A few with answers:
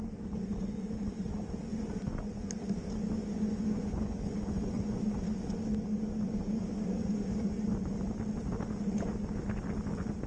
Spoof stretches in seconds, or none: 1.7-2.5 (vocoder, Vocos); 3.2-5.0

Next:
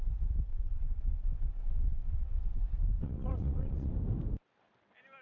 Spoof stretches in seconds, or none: 0.5-2.6 (vocoder, WaveNeXt); 3.0-3.9